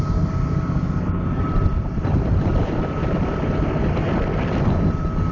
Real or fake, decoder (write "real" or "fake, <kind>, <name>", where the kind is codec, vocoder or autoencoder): real